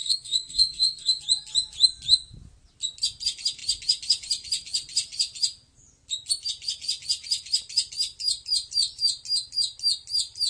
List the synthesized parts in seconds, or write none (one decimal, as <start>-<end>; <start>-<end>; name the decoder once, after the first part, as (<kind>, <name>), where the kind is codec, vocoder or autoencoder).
0.0-1.2 (codec, SNAC)